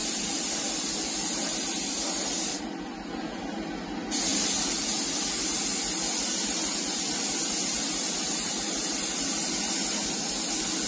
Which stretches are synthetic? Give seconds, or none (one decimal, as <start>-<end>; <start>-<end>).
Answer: 0.0-3.7